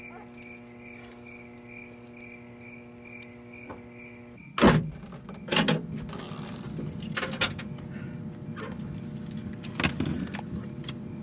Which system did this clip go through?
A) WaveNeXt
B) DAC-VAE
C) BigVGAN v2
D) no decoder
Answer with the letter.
D